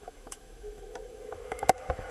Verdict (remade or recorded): remade